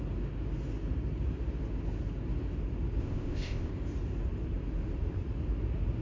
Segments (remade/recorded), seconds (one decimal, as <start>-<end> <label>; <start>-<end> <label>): 0.0-3.0 recorded; 3.0-3.7 remade; 3.7-6.0 recorded